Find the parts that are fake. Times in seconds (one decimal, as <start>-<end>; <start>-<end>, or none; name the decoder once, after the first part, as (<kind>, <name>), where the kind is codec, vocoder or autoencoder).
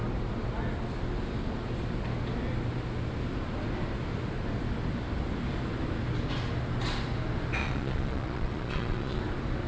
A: 7.6-9.2 (vocoder, Vocos)